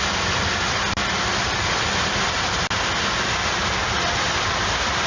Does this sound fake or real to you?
real